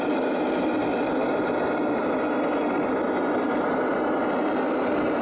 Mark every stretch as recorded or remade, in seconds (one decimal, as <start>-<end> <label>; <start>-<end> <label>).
0.0-5.2 recorded